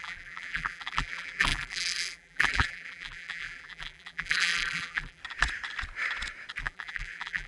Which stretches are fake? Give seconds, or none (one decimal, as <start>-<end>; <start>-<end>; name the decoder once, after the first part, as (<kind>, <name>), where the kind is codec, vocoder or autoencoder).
0.0-5.2 (vocoder, BigVGAN v2); 6.6-7.5

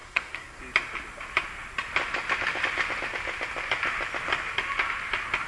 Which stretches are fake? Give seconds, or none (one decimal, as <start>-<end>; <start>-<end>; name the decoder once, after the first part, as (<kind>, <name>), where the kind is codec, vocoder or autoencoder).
0.0-0.6 (codec, SNAC)